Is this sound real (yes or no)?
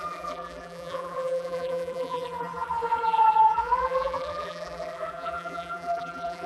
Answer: no